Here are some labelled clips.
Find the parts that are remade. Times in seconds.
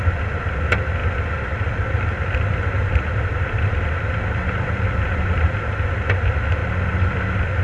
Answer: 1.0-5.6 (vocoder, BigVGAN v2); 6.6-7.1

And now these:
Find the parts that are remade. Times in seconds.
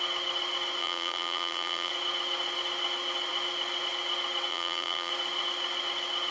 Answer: 0.8-1.9 (vocoder, BigVGAN v2); 4.5-5.1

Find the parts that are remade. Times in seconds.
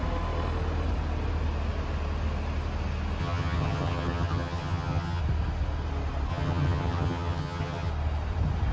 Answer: 3.2-5.2 (vocoder, HiFi-GAN); 6.3-7.9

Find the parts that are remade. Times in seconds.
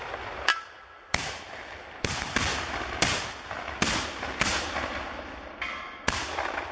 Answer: none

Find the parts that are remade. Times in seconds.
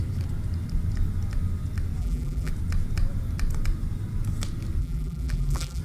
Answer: 2.0-2.5 (vocoder, BigVGAN v2); 4.8-5.8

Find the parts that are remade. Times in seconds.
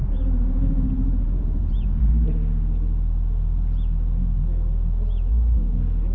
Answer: 0.0-2.1 (vocoder, BigVGAN v2)